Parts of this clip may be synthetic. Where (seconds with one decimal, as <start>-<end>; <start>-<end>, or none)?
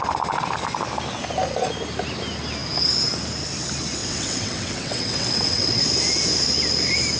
4.0-5.8